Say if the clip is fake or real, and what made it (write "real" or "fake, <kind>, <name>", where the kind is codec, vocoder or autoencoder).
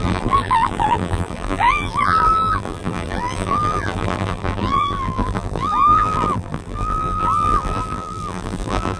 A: fake, vocoder, BigVGAN v2